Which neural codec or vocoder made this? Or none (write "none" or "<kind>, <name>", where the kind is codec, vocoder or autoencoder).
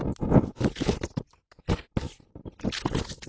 none